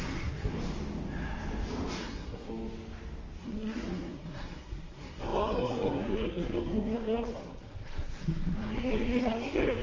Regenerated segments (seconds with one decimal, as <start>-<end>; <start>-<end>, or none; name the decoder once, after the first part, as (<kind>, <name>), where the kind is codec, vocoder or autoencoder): 0.0-0.5 (codec, SNAC); 2.0-2.5; 3.4-9.8